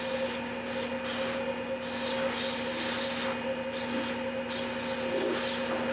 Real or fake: real